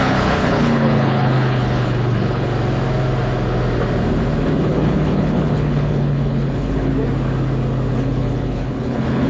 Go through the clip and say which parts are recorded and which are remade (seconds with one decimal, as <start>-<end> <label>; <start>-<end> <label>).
0.0-2.5 remade; 2.5-4.6 recorded; 4.6-6.9 remade; 6.9-7.9 recorded; 7.9-9.3 remade